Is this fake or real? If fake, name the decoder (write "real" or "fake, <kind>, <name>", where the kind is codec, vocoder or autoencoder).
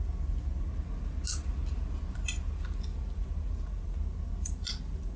real